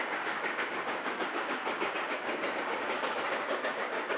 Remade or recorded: remade